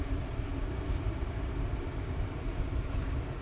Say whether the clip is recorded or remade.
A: remade